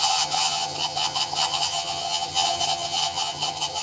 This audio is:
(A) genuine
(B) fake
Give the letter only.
B